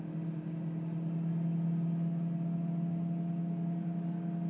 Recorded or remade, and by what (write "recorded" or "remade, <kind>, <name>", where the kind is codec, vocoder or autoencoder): recorded